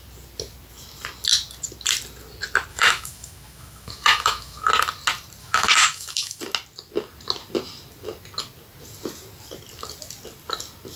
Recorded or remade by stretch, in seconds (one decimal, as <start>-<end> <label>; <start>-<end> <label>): 0.0-2.7 recorded; 2.7-4.7 remade; 4.7-5.4 recorded; 5.4-6.4 remade; 6.4-11.0 recorded